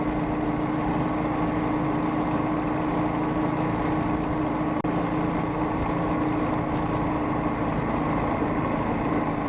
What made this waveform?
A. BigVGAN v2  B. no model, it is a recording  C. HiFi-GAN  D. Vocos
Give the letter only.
B